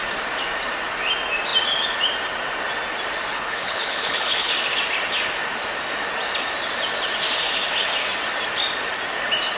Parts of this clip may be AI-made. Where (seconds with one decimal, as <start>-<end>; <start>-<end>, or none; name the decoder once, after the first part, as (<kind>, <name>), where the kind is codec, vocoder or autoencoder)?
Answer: 3.3-4.5 (codec, HILCodec)